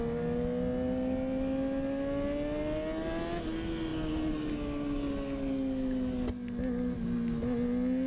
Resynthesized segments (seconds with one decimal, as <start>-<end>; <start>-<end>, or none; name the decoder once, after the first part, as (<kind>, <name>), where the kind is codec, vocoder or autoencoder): none